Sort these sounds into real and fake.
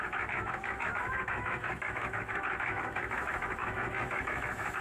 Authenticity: fake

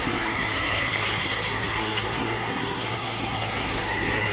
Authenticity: fake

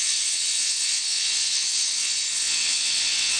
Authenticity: fake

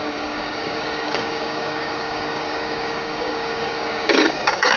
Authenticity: fake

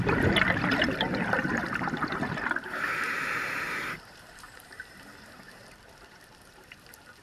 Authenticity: fake